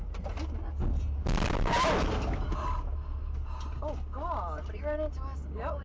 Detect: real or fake real